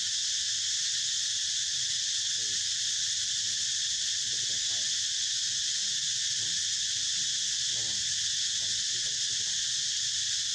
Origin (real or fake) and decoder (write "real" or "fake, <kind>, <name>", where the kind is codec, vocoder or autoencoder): real